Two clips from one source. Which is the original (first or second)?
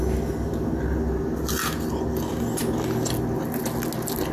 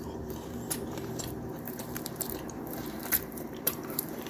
first